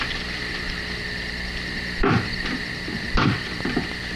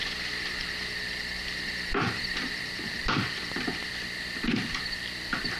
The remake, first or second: second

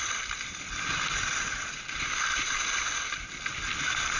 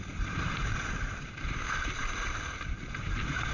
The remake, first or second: second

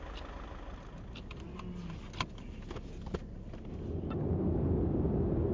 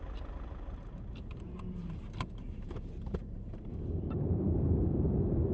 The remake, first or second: second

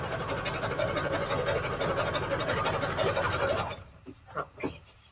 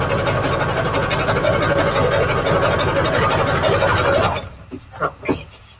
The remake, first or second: first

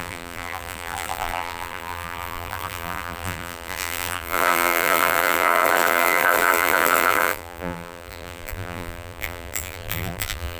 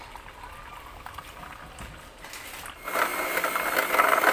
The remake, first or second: first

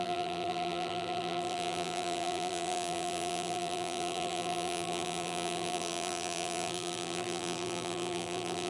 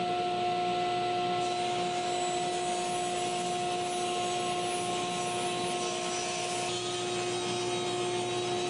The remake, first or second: first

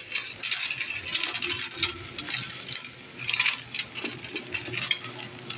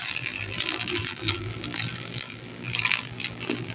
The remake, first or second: second